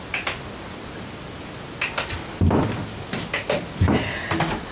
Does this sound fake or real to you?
real